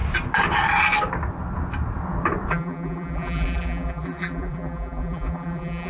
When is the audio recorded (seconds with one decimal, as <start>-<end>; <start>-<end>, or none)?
0.0-2.5